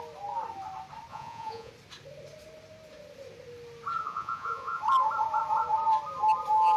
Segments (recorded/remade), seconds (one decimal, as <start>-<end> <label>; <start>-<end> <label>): 0.0-1.1 recorded; 1.1-1.7 remade; 1.7-4.0 recorded; 4.0-4.8 remade; 4.8-6.8 recorded